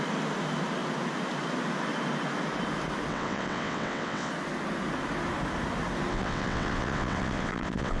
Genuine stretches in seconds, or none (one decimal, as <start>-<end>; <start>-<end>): 0.0-3.1; 4.3-6.1